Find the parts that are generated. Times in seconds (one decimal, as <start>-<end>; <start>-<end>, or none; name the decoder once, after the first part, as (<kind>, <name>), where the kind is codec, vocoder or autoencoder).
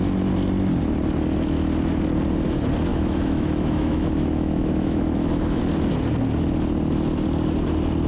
2.9-5.6 (autoencoder, DAC-VAE)